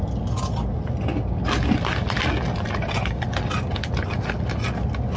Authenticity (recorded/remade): recorded